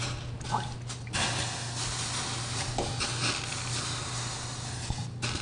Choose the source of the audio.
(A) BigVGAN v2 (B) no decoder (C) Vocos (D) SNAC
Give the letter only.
B